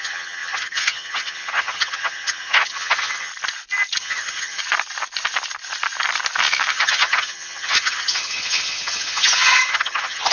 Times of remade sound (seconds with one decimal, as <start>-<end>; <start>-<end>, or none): 0.0-3.3; 4.0-4.6; 6.7-10.3